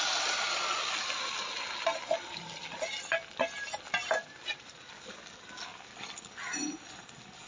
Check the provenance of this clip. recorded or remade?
recorded